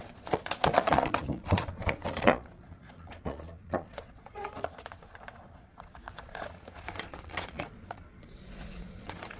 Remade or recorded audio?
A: remade